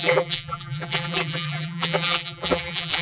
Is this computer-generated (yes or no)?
yes